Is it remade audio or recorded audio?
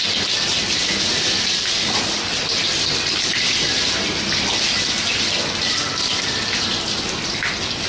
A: recorded